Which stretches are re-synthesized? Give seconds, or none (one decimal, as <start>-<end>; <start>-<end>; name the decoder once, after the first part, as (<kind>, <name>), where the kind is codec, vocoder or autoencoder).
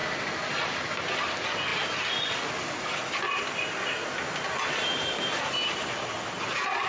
none